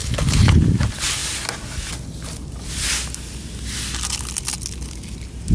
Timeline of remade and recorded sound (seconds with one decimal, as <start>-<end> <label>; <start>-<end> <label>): 0.0-0.6 remade; 0.6-5.5 recorded